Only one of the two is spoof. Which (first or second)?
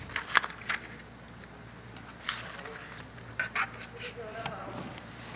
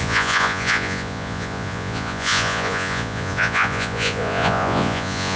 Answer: second